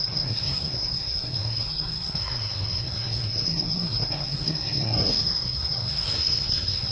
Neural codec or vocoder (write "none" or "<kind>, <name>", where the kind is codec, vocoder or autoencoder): codec, SNAC